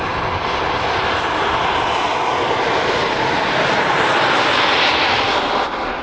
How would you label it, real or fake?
real